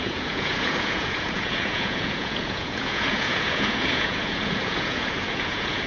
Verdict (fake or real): fake